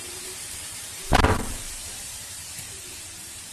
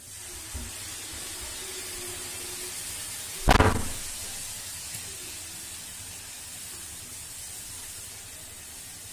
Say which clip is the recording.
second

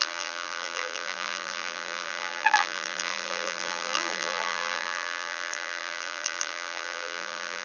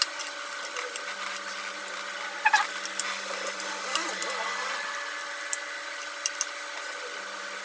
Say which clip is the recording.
second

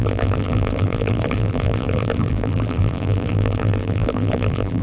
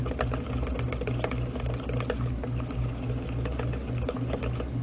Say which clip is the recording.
second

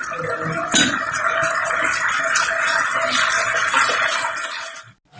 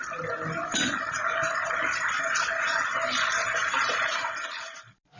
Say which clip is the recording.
first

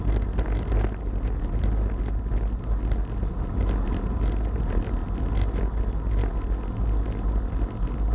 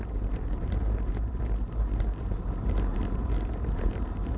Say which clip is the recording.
first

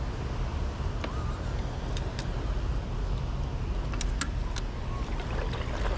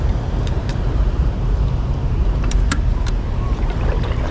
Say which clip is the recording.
first